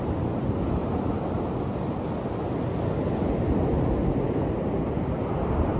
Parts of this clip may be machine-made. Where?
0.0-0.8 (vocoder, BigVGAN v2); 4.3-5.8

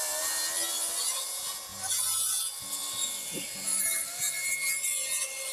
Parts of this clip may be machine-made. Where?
none

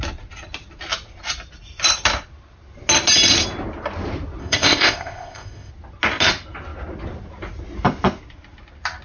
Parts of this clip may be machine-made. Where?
4.4-5.7 (codec, ZipCodec)

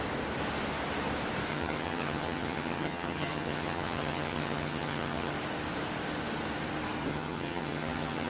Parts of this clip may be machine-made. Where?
1.5-5.3 (vocoder, HiFi-GAN); 7.1-8.3

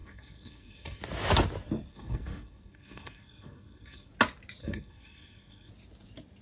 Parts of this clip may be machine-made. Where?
0.0-1.0 (codec, SNAC); 1.9-4.1; 4.6-5.7